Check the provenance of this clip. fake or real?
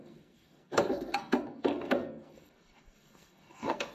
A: fake